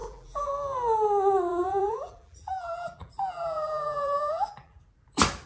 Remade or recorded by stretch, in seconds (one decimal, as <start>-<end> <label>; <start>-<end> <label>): 0.0-0.5 remade; 0.5-1.5 recorded; 1.5-4.8 remade; 4.8-5.5 recorded